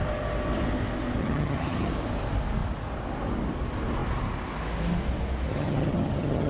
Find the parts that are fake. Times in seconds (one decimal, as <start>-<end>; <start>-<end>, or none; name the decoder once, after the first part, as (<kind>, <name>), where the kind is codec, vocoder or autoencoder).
1.2-1.9 (vocoder, HiFi-GAN); 5.5-6.5